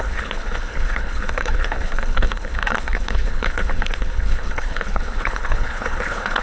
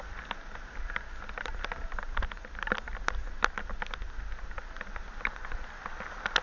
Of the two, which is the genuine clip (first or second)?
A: second